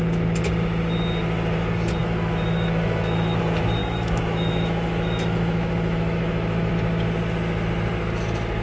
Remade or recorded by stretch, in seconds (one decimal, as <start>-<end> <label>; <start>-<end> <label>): 0.0-2.0 recorded; 2.0-3.4 remade; 3.4-3.8 recorded; 3.8-6.7 remade; 6.7-8.6 recorded